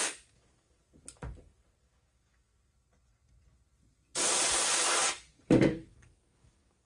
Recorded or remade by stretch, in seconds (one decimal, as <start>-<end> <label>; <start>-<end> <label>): 0.0-0.8 remade; 0.8-1.8 recorded; 1.8-2.5 remade; 2.5-5.3 recorded; 5.3-6.8 remade